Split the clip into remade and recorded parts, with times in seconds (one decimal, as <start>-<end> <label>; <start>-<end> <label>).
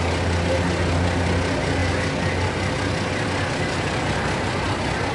0.0-5.1 recorded